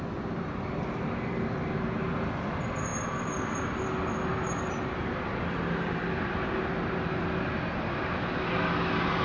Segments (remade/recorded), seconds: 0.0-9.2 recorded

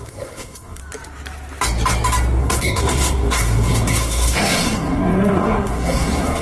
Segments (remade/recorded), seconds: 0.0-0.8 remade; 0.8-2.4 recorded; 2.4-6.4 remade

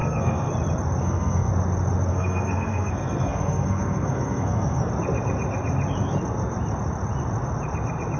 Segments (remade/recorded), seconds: 0.0-0.5 remade; 0.5-1.0 recorded; 1.0-1.5 remade; 1.5-2.1 recorded; 2.1-4.9 remade; 4.9-8.2 recorded